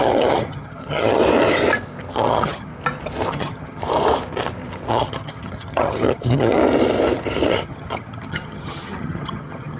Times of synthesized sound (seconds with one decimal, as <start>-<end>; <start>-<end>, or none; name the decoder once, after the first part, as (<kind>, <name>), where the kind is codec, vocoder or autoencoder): 0.0-1.2 (vocoder, HiFi-GAN); 2.1-2.7; 3.3-3.8; 4.9-6.6; 7.5-9.8